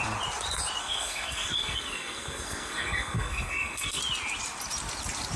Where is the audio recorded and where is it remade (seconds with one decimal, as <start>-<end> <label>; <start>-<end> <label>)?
0.0-0.8 recorded; 0.8-4.0 remade; 4.0-5.4 recorded